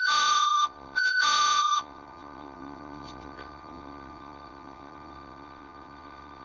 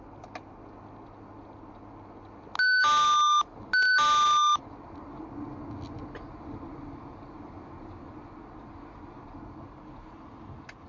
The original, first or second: second